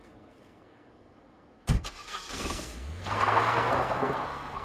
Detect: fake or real fake